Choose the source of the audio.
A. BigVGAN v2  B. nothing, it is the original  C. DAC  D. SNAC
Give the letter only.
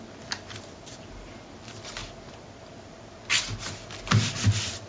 B